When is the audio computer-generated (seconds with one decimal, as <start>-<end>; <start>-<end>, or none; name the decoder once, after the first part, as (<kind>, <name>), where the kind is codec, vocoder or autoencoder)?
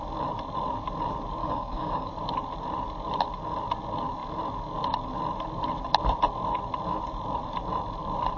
1.4-2.1 (codec, DAC)